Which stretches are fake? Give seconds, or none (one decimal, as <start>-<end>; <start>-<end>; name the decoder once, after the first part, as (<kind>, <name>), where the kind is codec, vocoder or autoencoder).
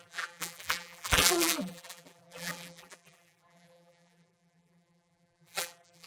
0.0-6.1 (vocoder, BigVGAN v2)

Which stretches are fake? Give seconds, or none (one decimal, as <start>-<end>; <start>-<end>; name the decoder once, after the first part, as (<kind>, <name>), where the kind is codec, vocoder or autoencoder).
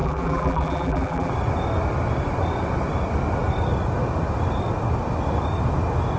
0.0-1.3 (vocoder, BigVGAN v2)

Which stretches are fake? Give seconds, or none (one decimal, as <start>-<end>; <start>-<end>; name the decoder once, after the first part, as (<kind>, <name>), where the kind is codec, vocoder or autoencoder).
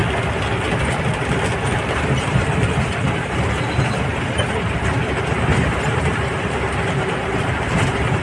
1.9-4.1 (vocoder, BigVGAN v2); 5.5-8.2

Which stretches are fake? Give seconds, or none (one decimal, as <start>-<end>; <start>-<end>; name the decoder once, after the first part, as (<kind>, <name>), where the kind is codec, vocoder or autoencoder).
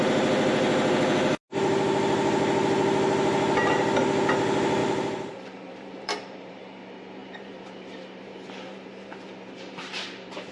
4.8-6.6 (vocoder, BigVGAN v2); 7.2-10.5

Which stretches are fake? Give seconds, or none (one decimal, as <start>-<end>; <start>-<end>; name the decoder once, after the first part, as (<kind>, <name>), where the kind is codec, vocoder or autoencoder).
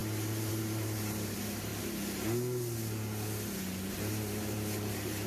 0.0-1.7 (vocoder, BigVGAN v2); 3.9-5.3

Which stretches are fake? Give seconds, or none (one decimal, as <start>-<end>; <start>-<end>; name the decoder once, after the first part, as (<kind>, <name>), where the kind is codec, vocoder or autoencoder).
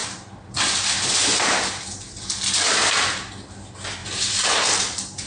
0.0-1.0 (vocoder, BigVGAN v2); 1.9-2.9; 4.0-5.3